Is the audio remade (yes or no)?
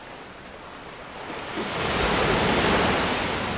no